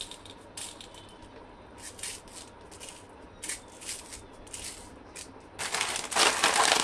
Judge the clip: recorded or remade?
recorded